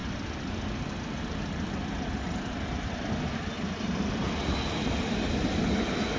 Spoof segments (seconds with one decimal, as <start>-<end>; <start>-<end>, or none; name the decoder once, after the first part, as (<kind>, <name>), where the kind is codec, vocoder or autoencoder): none